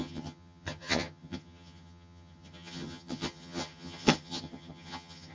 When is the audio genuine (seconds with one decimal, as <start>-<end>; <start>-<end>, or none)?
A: none